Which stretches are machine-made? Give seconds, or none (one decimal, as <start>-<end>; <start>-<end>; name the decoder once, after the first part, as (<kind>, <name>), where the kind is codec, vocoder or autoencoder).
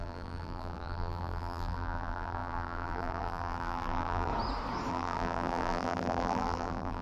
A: 0.0-4.3 (vocoder, BigVGAN v2); 4.9-7.0